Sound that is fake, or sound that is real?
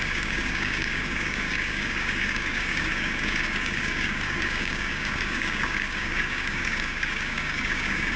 fake